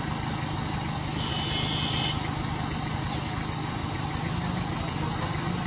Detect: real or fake real